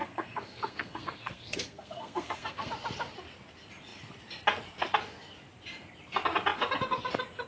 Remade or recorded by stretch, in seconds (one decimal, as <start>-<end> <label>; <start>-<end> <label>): 0.0-2.7 remade; 2.7-7.5 recorded